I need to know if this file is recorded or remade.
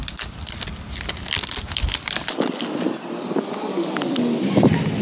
recorded